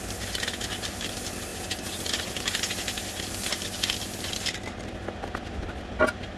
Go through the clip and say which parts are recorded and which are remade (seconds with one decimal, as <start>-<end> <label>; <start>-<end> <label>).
0.0-6.4 recorded